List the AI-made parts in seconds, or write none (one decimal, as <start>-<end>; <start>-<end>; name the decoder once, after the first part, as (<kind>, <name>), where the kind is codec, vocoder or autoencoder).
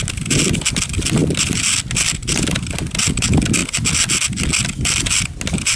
none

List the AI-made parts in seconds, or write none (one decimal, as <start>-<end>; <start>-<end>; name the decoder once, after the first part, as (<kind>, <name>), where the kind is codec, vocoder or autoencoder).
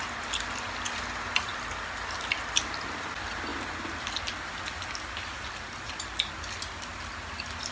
1.5-2.6 (vocoder, BigVGAN v2)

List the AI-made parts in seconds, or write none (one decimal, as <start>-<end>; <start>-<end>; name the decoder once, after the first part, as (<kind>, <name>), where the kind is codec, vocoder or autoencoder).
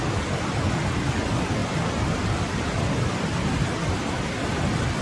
1.6-4.2 (vocoder, BigVGAN v2)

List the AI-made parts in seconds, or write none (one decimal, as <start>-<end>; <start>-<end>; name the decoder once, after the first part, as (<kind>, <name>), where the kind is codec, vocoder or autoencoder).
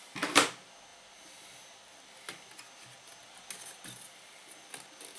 none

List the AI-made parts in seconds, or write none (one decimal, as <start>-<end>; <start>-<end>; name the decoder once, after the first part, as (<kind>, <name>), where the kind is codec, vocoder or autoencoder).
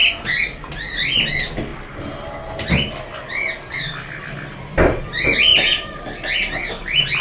0.0-1.7 (vocoder, BigVGAN v2); 4.2-7.2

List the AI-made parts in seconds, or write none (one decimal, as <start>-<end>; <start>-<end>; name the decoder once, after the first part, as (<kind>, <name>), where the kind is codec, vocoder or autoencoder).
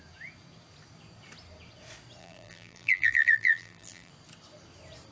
2.2-4.1 (vocoder, BigVGAN v2)